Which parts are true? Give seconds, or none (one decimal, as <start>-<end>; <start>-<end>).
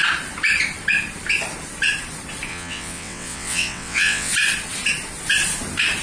0.0-2.5; 4.3-6.0